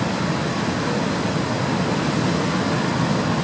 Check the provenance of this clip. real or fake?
real